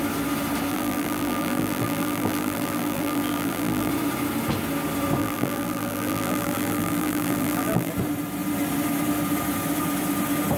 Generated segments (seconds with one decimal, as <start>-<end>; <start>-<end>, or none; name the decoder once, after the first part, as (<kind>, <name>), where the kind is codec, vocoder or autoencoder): 0.7-3.9 (vocoder, BigVGAN v2); 5.2-7.9